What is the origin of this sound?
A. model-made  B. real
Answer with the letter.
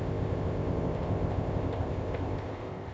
A